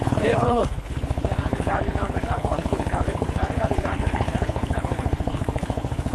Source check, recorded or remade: remade